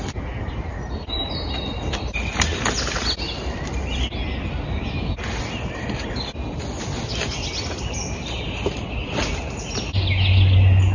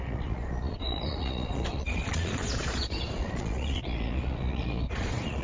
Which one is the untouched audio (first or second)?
first